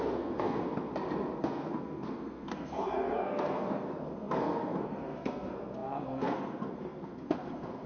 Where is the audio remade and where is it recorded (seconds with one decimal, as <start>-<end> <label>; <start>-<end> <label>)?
0.0-0.9 remade; 0.9-1.4 recorded; 1.4-7.9 remade